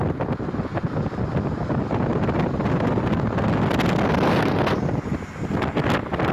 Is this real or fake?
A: real